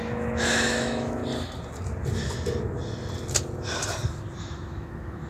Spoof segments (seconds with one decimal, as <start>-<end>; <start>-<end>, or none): 0.0-1.2; 4.4-5.3